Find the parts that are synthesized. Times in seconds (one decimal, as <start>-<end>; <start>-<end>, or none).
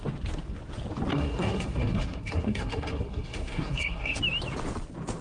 1.1-4.2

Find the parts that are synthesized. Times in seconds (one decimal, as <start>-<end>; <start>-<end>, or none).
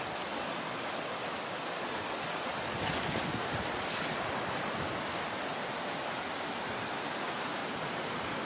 7.6-8.5